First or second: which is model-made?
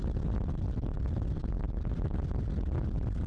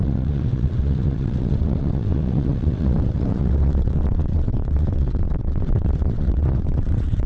second